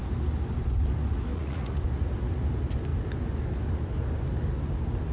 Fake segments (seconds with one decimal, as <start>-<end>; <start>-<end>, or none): 1.3-1.8